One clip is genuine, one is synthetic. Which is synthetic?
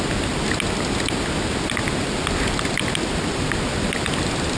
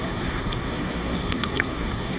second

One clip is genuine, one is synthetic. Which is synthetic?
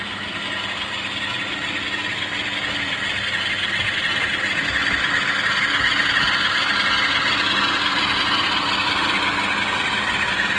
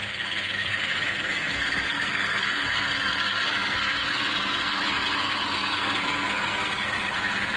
second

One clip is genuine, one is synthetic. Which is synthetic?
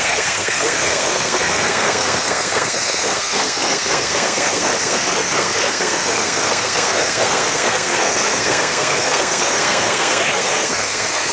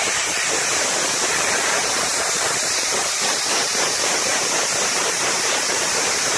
first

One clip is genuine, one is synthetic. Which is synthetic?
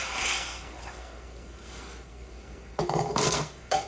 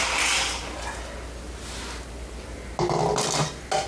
first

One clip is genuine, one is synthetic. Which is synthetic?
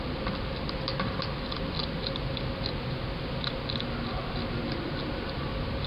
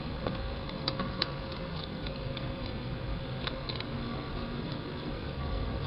second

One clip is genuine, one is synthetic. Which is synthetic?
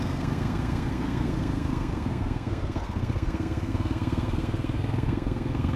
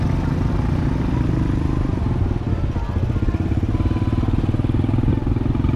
first